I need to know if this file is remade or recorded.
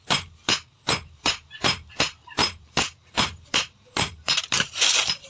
remade